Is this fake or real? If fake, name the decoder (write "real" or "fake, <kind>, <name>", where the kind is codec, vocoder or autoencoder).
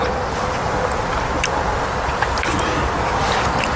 real